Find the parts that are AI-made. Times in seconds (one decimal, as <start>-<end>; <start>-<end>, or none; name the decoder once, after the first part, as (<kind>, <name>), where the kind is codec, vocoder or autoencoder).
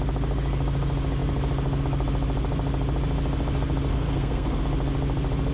3.9-4.6 (codec, SNAC)